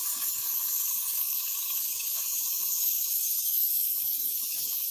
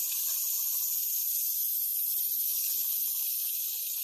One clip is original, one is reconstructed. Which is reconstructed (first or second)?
first